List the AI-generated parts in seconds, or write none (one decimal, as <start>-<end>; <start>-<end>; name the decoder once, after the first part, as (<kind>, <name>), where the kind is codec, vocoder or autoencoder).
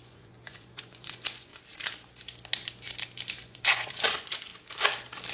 0.0-1.5 (vocoder, Vocos); 3.3-4.5